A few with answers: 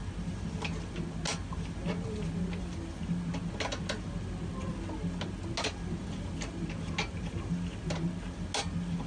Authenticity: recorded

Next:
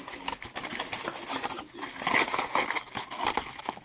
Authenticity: recorded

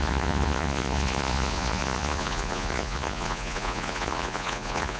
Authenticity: remade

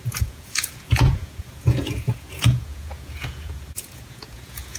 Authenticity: remade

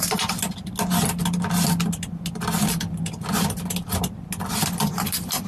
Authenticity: recorded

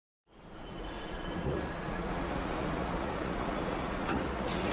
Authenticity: remade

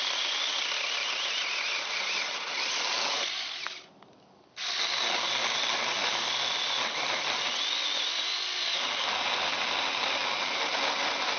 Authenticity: recorded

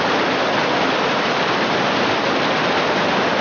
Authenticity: recorded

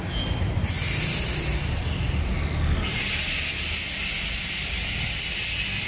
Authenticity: recorded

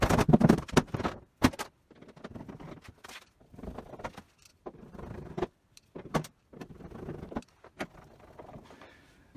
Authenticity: recorded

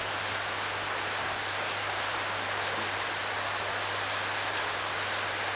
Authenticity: recorded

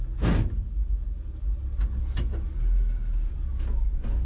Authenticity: recorded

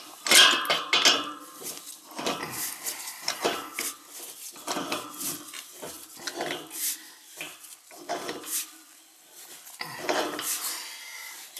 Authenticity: recorded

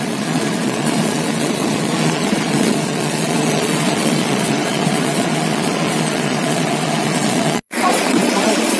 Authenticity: remade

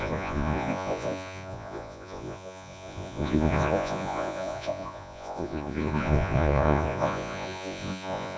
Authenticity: remade